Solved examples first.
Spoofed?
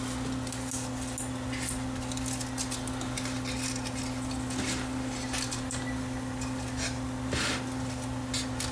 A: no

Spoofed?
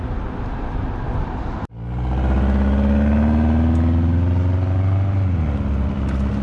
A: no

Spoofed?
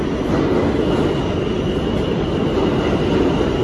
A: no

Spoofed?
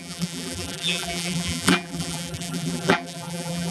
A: yes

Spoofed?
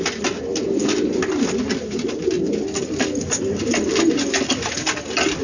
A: no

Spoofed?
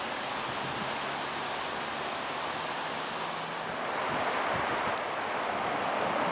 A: no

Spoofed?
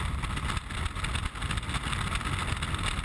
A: no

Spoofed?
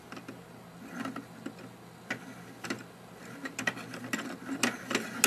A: no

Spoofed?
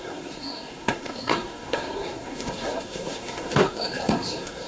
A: yes